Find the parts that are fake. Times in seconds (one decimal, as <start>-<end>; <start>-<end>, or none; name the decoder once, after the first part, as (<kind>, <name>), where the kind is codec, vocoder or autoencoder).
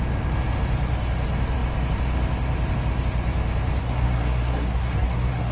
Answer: 3.8-5.5 (codec, SNAC)